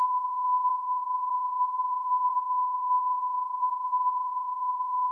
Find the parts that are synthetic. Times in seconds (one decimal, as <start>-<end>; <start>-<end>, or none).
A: 0.0-5.1